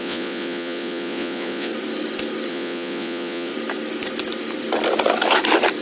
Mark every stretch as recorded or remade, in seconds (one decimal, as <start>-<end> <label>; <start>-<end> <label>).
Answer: 0.0-1.7 remade; 1.7-2.5 recorded; 2.5-3.5 remade; 3.5-5.8 recorded